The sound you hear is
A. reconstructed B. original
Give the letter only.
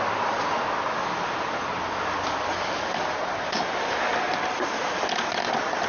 B